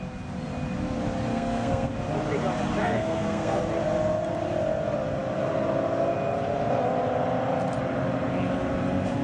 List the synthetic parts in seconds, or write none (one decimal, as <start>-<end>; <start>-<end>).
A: 1.3-1.9; 2.8-3.6